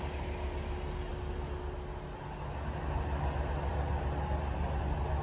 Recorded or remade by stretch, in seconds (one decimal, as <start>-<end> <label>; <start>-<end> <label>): 0.0-5.2 recorded